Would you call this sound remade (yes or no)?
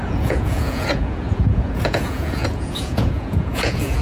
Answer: yes